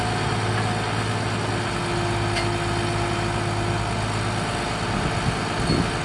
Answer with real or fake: real